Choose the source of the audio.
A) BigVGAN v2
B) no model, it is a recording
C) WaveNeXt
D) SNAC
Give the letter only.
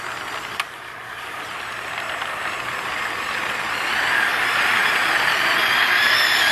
A